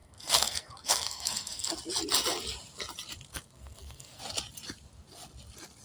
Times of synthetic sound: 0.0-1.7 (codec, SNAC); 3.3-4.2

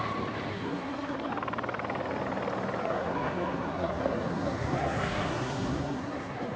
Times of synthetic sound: 0.5-1.3 (codec, SNAC); 2.8-6.6

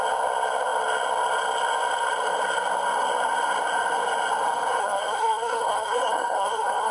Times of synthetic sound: 4.8-6.9 (codec, SNAC)

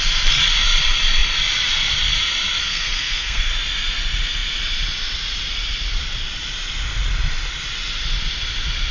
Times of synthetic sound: 2.6-3.5 (codec, SNAC)

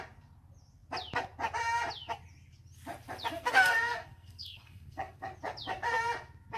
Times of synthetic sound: 3.3-5.3 (codec, SNAC)

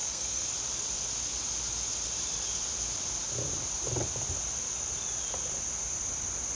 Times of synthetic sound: 0.0-0.5 (codec, SNAC)

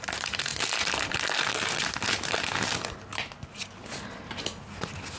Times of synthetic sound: none

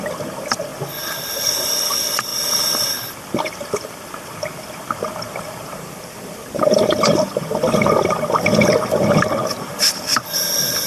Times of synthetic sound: none